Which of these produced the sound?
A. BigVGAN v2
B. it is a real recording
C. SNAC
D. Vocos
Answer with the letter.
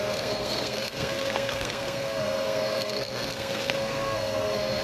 C